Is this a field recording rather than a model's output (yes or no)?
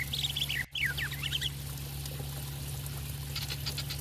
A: yes